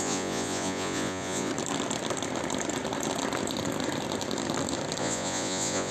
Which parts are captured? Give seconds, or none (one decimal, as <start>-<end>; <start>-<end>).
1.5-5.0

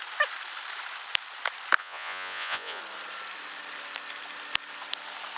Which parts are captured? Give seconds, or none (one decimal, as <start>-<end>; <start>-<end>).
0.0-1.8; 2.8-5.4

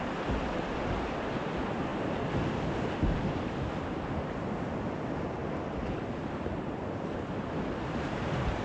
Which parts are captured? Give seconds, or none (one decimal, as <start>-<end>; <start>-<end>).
0.0-8.6

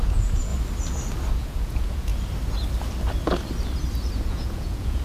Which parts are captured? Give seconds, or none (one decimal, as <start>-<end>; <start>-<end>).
0.5-1.3; 2.1-4.2